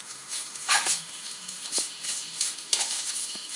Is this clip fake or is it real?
fake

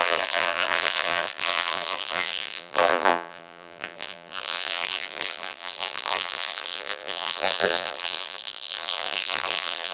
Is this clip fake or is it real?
fake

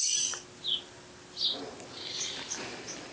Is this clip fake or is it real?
real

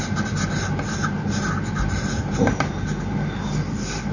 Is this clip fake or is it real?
real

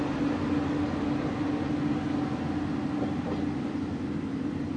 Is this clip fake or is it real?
real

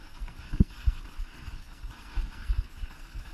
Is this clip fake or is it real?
fake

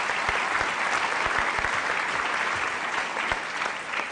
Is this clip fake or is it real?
real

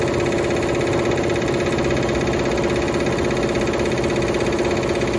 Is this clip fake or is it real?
real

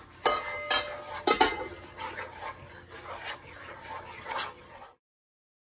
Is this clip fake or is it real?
real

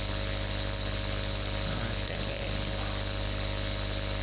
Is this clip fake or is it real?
real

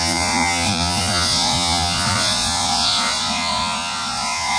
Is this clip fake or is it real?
fake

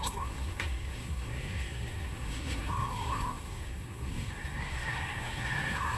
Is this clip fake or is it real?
fake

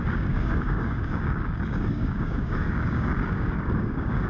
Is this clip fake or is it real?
fake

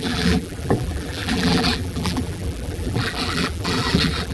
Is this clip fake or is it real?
fake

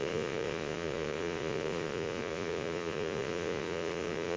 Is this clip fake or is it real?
fake